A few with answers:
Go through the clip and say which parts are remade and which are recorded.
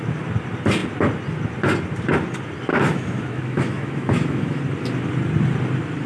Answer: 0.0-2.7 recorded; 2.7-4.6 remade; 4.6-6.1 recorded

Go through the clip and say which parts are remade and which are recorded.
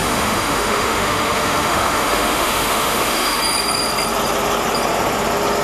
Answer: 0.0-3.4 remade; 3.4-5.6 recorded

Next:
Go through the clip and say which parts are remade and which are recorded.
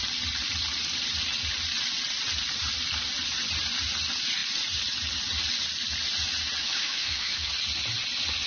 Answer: 0.0-6.6 recorded; 6.6-7.5 remade; 7.5-8.5 recorded